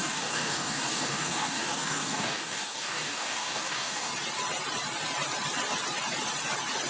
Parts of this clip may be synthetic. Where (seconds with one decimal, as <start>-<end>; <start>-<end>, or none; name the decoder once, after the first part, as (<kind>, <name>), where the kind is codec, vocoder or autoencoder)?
0.0-4.1 (codec, DAC)